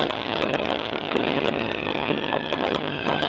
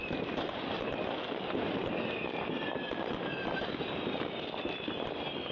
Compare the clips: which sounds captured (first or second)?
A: second